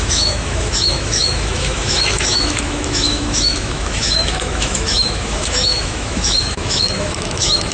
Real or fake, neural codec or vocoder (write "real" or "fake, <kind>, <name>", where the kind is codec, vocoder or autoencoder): fake, autoencoder, DAC-VAE